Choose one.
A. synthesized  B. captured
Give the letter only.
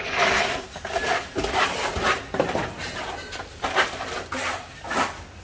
A